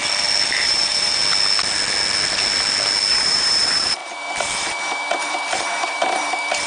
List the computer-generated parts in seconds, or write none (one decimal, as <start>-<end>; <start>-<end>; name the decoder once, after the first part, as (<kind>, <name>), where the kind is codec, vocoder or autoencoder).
0.5-1.2 (vocoder, BigVGAN v2); 3.1-6.7